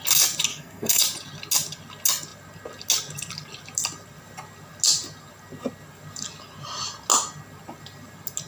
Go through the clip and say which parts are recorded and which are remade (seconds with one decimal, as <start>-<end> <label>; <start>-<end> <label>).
0.0-0.5 recorded; 0.5-1.0 remade; 1.0-8.5 recorded